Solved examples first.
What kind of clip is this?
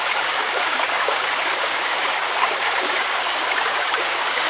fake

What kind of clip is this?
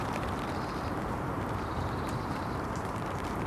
fake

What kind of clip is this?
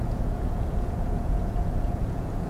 fake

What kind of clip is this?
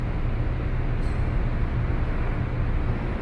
real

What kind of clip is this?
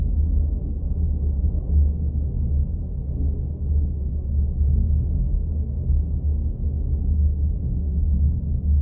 real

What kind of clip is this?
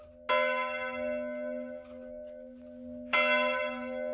real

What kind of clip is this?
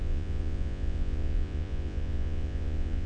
fake